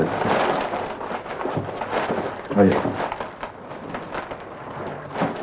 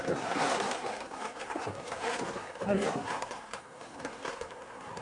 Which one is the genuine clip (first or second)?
first